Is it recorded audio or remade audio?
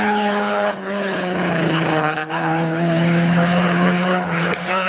remade